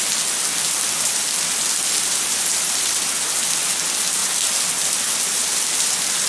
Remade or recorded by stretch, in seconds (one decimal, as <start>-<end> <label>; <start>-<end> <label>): 0.0-6.3 recorded